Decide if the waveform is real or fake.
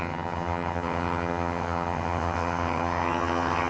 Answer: fake